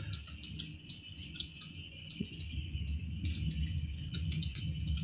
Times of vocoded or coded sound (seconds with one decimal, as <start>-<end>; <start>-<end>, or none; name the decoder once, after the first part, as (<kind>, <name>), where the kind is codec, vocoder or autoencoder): 0.7-2.8 (vocoder, Vocos); 3.7-4.6